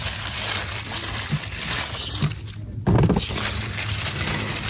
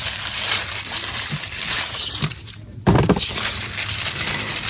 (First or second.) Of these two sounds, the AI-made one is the second